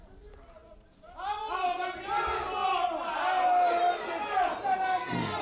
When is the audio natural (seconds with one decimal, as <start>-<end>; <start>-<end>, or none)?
0.0-5.4